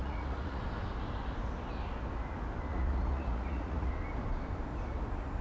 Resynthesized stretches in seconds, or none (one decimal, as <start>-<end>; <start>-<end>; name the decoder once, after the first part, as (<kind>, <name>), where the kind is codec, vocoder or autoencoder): 0.0-0.6 (vocoder, Vocos); 2.7-3.9